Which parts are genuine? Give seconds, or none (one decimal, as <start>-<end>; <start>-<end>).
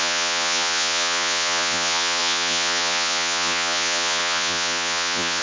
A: none